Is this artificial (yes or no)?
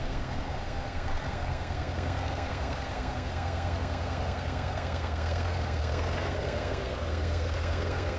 yes